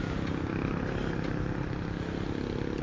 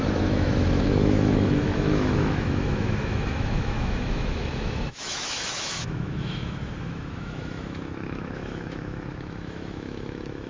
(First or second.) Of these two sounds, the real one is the first